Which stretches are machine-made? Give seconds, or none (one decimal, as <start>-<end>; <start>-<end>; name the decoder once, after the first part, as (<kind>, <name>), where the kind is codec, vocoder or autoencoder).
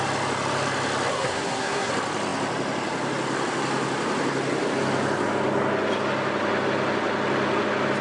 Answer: 1.1-1.9 (codec, SNAC)